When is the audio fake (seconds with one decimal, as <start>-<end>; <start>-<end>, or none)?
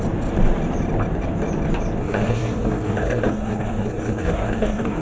2.0-5.0